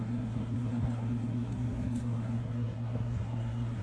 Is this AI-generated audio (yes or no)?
yes